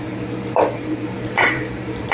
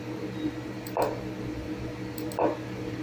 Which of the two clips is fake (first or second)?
first